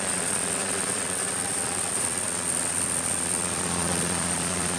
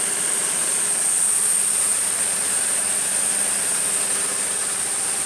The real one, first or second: second